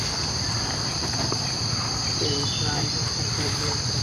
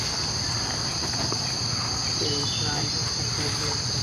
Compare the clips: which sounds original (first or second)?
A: second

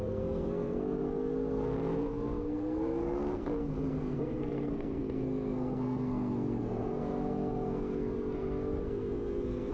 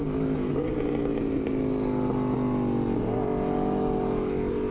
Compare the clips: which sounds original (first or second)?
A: second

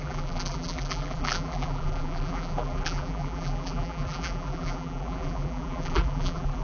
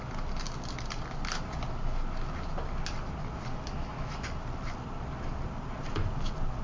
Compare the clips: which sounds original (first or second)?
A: second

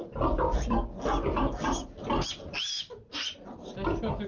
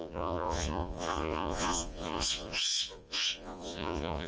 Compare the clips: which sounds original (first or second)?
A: first